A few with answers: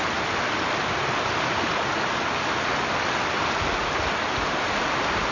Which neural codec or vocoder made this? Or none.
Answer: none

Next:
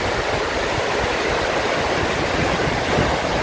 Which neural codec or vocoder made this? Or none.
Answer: none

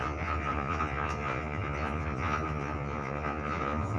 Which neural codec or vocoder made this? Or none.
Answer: vocoder, Vocos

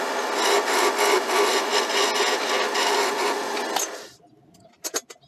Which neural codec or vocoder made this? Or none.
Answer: none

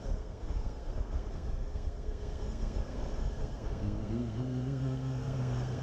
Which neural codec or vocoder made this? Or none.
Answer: codec, SNAC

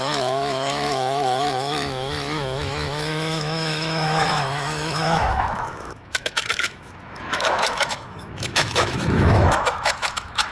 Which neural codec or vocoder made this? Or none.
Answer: autoencoder, DAC-VAE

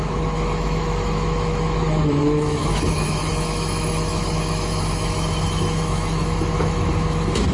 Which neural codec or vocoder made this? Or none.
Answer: autoencoder, DAC-VAE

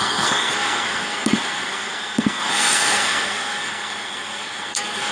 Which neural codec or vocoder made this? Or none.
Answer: codec, SNAC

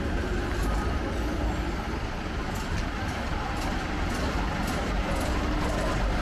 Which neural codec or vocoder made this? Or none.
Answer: none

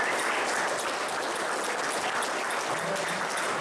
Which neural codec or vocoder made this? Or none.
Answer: none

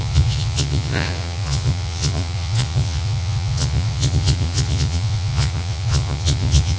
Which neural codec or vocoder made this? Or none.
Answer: vocoder, Vocos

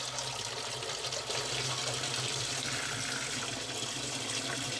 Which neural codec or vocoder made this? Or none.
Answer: none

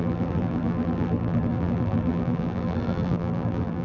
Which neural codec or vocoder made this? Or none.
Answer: vocoder, BigVGAN v2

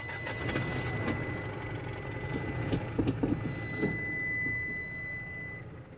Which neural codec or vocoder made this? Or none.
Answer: none